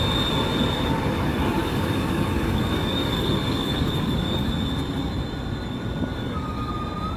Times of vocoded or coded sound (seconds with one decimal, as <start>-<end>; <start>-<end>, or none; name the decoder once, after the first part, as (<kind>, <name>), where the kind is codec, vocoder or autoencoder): 1.3-4.5 (codec, DAC); 6.1-6.7